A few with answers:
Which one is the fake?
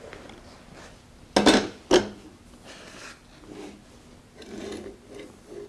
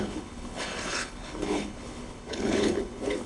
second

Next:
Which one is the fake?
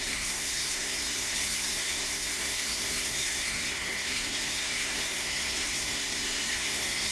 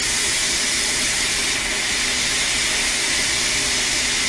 first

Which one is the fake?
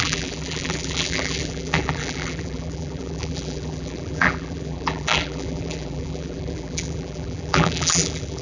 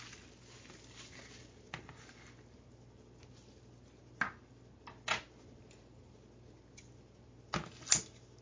first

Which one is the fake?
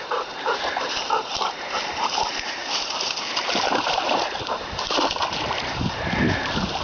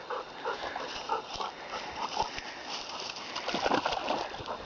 first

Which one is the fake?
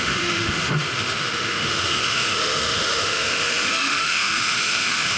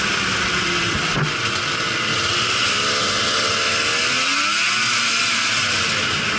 first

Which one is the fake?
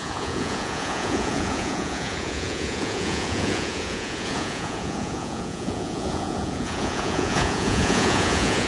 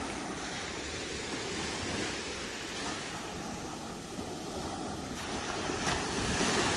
first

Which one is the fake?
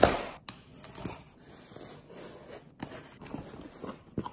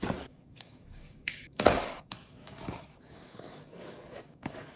second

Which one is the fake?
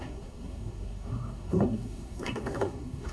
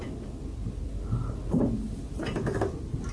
first